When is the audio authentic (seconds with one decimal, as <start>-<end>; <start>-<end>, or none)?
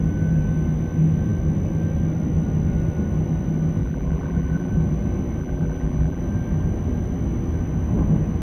0.0-3.8; 4.7-5.4; 6.2-8.4